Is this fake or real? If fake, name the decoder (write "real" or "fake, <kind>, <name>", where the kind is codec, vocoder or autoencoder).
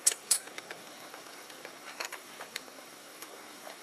fake, codec, SNAC